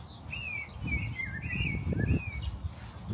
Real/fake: real